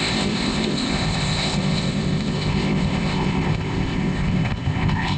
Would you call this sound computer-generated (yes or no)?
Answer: yes